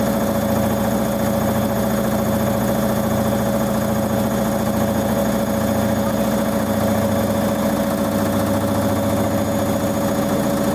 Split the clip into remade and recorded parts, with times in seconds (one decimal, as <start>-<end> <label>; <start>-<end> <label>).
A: 0.0-10.7 recorded